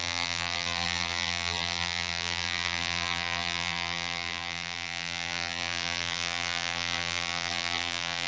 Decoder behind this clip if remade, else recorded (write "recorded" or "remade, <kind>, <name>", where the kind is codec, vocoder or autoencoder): remade, vocoder, BigVGAN v2